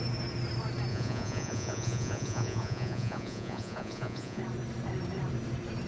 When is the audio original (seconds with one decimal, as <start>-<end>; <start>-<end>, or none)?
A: 0.0-0.9; 4.4-5.9